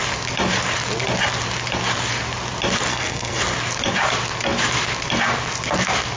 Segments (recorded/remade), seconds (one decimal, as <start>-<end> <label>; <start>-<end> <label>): 0.0-2.9 recorded; 2.9-3.4 remade; 3.4-6.2 recorded